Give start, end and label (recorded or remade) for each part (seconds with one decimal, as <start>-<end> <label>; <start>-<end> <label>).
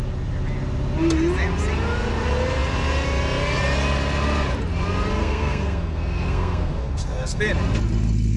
0.0-5.2 recorded; 5.2-7.4 remade; 7.4-8.4 recorded